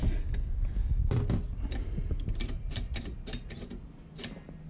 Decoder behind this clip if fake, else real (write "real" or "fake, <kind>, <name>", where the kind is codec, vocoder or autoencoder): real